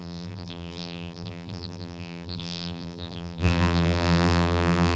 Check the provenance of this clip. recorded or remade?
remade